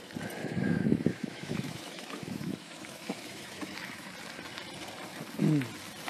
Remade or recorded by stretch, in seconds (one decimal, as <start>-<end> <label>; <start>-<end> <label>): 0.0-0.4 recorded; 0.4-4.1 remade; 4.1-6.1 recorded